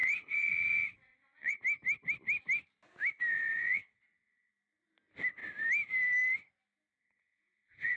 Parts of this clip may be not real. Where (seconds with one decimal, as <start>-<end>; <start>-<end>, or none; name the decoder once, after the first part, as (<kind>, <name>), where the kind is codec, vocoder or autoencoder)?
0.0-1.6 (vocoder, WaveNeXt); 3.3-4.5; 7.0-8.0